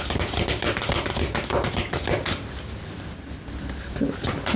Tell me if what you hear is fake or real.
real